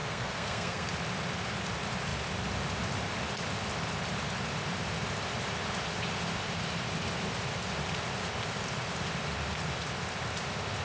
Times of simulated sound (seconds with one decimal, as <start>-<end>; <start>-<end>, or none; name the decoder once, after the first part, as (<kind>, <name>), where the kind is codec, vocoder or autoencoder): 0.0-0.9 (codec, SNAC)